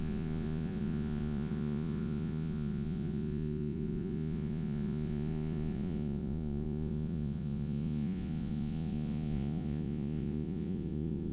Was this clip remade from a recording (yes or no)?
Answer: yes